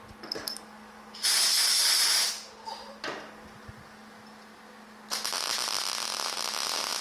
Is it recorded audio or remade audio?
recorded